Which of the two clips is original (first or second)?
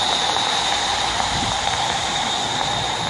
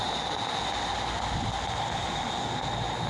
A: second